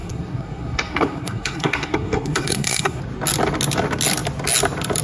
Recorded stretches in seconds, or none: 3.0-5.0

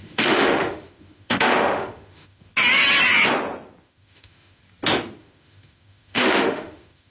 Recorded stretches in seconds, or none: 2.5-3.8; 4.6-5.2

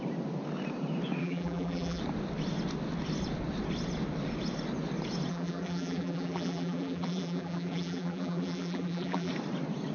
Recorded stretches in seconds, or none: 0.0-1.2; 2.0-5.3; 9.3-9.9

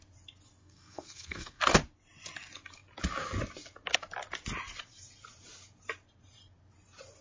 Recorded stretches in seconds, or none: 0.0-0.6; 1.6-7.2

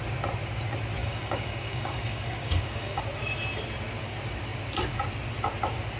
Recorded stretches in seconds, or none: 0.0-1.0; 3.0-6.0